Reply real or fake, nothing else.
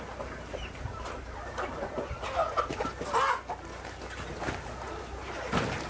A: real